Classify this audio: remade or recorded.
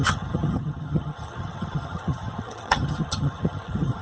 remade